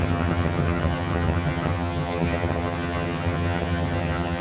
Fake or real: fake